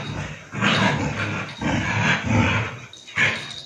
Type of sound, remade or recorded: recorded